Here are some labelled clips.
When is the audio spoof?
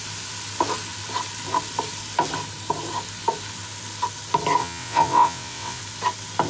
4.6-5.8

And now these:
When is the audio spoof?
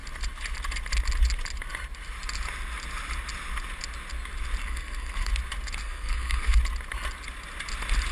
4.6-5.3; 5.8-6.6